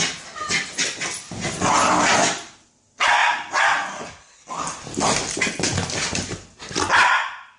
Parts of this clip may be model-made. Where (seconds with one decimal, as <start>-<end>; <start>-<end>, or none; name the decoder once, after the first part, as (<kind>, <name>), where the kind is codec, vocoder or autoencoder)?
3.2-6.6 (vocoder, BigVGAN v2)